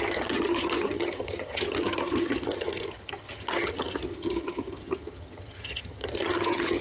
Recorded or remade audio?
remade